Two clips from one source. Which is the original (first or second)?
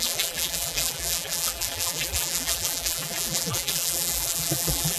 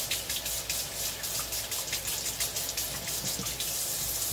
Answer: second